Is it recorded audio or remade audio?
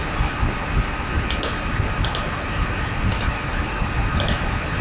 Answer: recorded